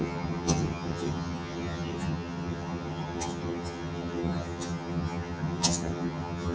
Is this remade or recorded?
remade